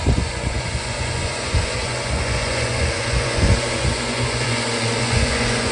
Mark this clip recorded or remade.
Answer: remade